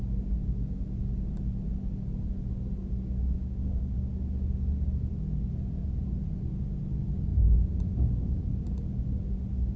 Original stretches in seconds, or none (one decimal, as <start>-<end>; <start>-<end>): 0.0-3.4; 4.1-9.8

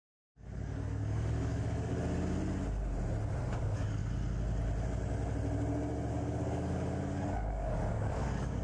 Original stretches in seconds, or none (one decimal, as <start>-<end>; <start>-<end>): 1.9-3.4; 4.0-6.1

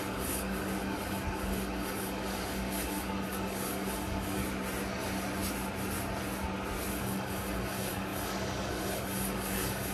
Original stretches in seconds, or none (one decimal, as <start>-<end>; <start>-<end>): 4.4-6.9

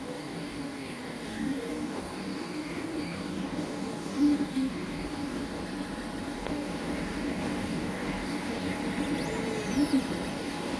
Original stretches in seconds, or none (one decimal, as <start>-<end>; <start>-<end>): 5.6-6.2; 8.8-10.3

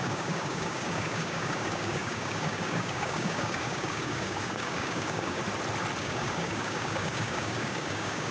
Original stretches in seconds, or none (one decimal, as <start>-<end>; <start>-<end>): 5.4-6.0